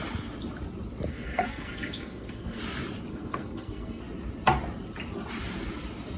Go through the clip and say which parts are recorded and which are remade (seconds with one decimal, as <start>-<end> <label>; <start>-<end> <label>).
0.0-1.1 recorded; 1.1-2.6 remade; 2.6-3.1 recorded; 3.1-4.0 remade; 4.0-6.2 recorded